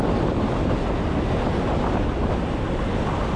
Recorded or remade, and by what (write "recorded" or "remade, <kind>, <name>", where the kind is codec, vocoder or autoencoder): recorded